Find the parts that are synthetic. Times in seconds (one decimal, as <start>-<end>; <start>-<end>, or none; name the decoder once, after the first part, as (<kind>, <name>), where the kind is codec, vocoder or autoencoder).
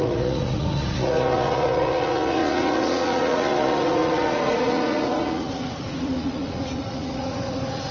0.0-7.9 (vocoder, Vocos)